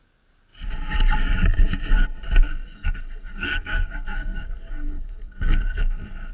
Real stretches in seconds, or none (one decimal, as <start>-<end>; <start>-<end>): 0.0-2.4